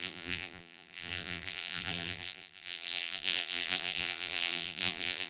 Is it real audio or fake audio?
fake